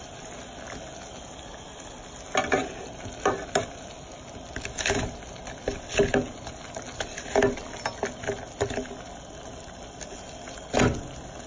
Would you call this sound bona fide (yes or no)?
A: yes